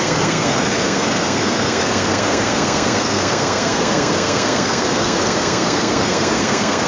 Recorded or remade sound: remade